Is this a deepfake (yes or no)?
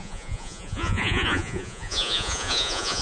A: yes